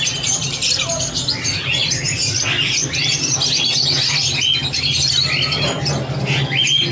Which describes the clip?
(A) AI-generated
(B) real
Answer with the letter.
B